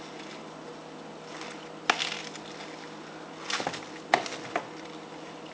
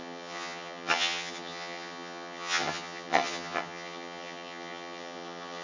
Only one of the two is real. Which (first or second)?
first